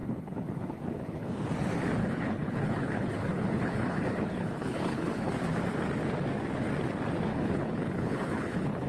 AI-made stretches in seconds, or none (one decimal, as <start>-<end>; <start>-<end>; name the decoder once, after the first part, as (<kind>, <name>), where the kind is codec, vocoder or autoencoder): 0.0-1.3 (codec, HILCodec); 2.0-5.3; 7.3-8.9